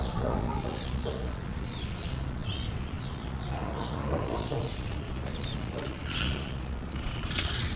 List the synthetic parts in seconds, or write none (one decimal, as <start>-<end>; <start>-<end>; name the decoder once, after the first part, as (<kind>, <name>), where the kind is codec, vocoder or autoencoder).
0.0-7.8 (vocoder, Vocos)